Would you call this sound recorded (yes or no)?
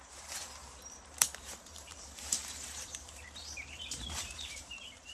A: no